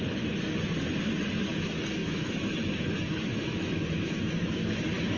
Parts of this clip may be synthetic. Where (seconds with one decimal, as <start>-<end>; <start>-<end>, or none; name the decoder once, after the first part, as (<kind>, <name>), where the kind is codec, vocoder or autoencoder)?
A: 2.0-5.2 (autoencoder, DAC-VAE)